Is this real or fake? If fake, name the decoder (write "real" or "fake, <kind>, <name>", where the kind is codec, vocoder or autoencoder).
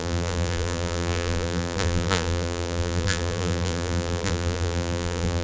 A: fake, vocoder, BigVGAN v2